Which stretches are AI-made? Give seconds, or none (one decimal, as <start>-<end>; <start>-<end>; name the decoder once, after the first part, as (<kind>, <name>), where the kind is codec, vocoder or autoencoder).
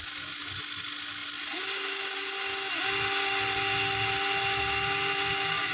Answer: none